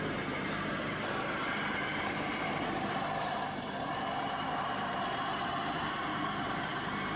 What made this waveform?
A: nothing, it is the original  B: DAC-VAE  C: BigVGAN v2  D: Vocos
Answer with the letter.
C